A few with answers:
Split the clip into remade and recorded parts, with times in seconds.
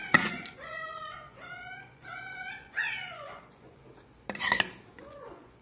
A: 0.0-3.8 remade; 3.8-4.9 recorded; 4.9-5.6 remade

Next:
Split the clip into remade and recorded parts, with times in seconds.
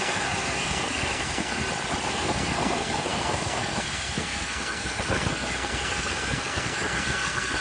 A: 0.0-1.6 remade; 1.6-2.1 recorded; 2.1-7.6 remade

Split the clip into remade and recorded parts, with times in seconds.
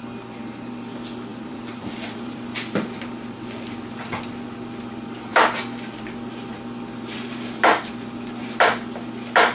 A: 0.0-1.3 recorded; 1.3-3.0 remade; 3.0-9.5 recorded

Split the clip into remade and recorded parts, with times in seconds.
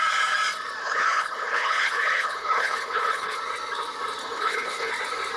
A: 0.0-0.8 recorded; 0.8-3.4 remade; 3.4-4.2 recorded; 4.2-4.9 remade; 4.9-5.4 recorded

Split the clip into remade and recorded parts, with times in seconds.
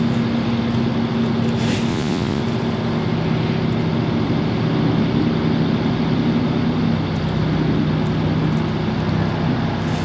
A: 0.0-1.9 recorded; 1.9-2.4 remade; 2.4-10.0 recorded